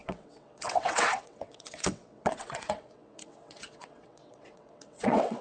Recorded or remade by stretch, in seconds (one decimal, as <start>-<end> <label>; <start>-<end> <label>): 0.0-5.4 remade